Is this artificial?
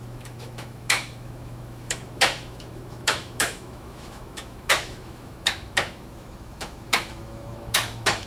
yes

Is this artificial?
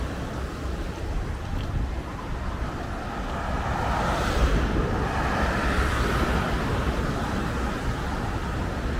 no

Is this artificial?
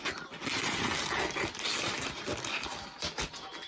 no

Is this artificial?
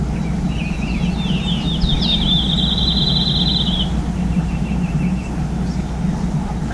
no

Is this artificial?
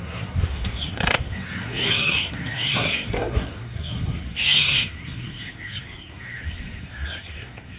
yes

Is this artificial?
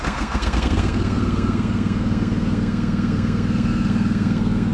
yes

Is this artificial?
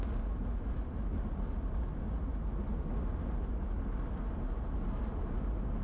no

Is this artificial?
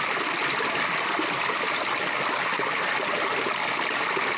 no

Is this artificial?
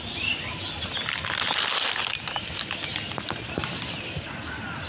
no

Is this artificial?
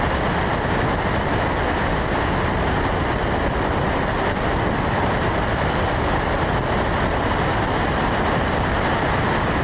no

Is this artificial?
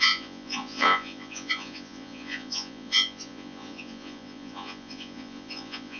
yes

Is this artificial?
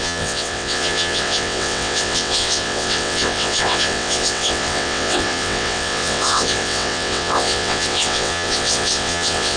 yes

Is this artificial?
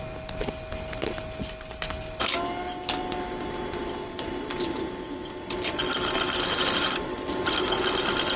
no